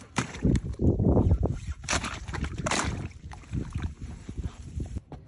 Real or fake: fake